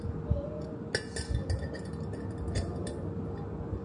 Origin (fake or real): real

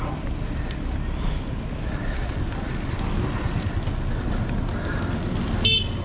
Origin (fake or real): real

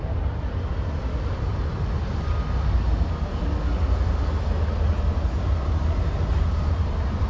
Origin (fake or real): real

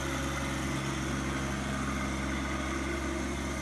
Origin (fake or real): real